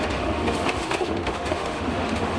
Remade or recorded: remade